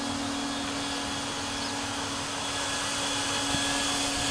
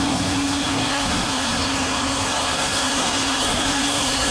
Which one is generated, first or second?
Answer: second